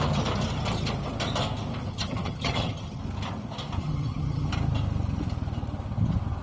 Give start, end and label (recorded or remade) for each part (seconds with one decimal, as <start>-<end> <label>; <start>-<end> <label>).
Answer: 0.0-1.9 recorded; 1.9-3.0 remade; 3.0-3.8 recorded; 3.8-4.5 remade; 4.5-6.4 recorded